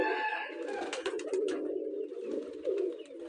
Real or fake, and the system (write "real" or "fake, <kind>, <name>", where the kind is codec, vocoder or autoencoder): real